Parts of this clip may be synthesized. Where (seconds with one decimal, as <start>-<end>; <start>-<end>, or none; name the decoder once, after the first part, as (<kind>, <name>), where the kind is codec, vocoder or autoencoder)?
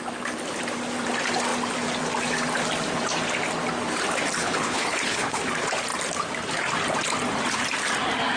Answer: 4.4-5.5 (codec, HILCodec)